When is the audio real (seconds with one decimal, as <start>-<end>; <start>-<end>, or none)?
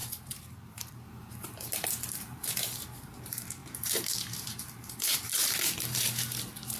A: none